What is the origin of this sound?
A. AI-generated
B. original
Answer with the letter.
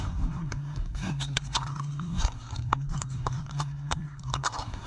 A